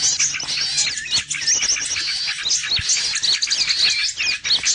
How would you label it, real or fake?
real